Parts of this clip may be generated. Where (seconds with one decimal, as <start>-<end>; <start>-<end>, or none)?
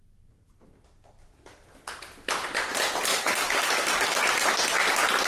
3.1-4.2